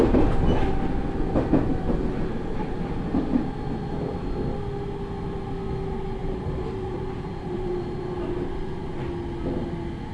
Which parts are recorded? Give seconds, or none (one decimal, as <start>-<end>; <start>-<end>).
0.0-6.2; 8.1-10.1